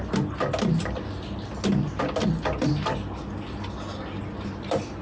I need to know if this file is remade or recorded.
recorded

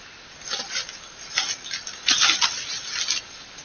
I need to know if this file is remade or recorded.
recorded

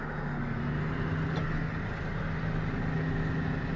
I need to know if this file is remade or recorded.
recorded